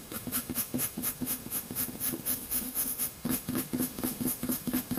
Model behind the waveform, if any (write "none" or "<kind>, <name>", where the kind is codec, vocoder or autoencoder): autoencoder, DAC-VAE